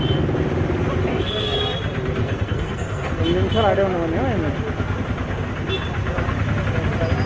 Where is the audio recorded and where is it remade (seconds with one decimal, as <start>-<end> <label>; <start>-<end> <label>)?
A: 0.0-1.1 recorded; 1.1-1.6 remade; 1.6-2.2 recorded; 2.2-3.2 remade; 3.2-7.3 recorded